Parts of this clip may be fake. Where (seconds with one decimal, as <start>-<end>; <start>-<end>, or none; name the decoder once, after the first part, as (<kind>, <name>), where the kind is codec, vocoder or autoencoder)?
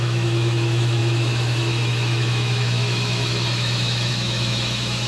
0.0-5.1 (autoencoder, DAC-VAE)